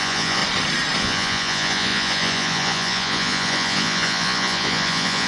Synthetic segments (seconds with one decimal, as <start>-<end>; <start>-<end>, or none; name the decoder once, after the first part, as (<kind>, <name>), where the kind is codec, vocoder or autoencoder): 0.0-0.4 (vocoder, Vocos); 1.0-5.3